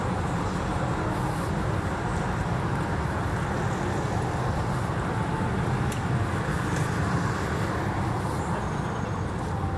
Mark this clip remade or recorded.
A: recorded